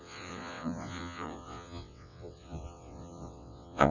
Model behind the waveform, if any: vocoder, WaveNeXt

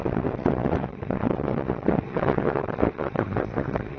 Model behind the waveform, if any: vocoder, WaveNeXt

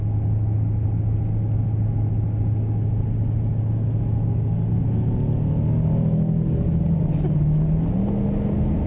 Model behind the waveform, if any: none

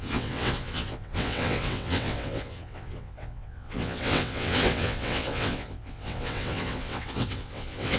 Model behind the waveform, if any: vocoder, WaveNeXt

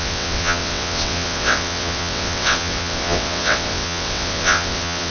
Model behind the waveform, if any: vocoder, WaveNeXt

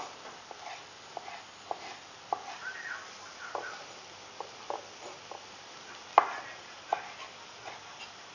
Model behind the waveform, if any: none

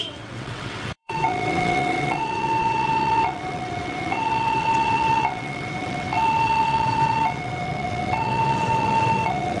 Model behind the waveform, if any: vocoder, WaveNeXt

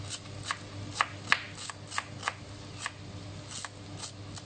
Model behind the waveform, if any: none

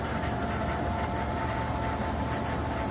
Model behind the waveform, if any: none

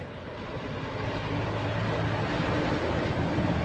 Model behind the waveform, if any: none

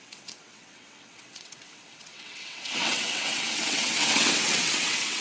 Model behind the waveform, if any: vocoder, WaveNeXt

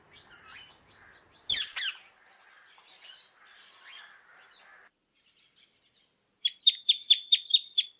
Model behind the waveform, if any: none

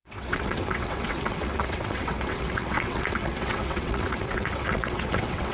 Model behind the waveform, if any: vocoder, WaveNeXt